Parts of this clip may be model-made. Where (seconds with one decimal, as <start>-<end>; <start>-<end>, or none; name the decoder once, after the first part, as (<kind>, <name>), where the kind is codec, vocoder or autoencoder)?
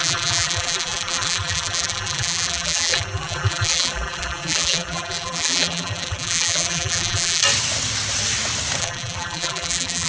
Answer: 0.0-7.4 (vocoder, BigVGAN v2); 8.8-10.1